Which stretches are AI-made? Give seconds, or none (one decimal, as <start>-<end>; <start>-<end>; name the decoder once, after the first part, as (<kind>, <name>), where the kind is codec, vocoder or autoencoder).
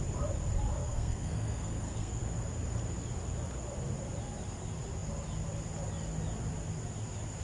0.8-2.2 (codec, SNAC)